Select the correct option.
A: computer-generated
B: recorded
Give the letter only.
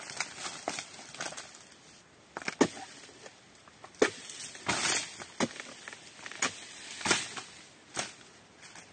B